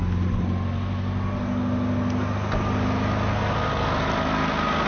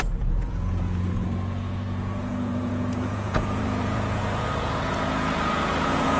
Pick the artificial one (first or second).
second